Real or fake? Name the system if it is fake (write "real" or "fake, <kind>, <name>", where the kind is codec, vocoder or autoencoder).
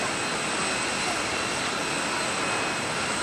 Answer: real